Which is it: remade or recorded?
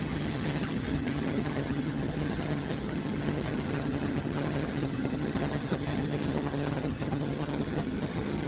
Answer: remade